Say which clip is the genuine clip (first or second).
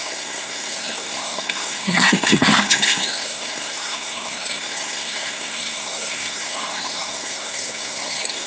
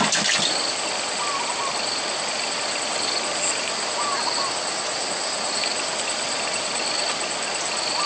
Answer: second